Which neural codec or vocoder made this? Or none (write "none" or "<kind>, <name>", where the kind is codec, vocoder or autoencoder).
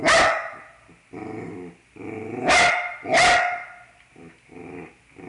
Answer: none